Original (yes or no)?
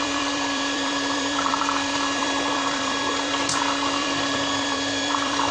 no